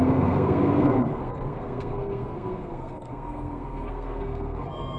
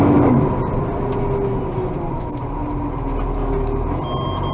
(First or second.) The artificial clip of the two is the first